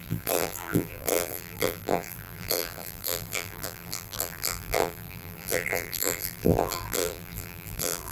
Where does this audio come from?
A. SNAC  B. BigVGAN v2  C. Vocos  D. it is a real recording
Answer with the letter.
B